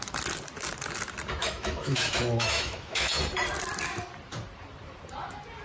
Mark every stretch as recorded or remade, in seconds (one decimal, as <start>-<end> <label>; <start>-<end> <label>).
0.0-1.4 recorded; 1.4-3.2 remade; 3.2-5.6 recorded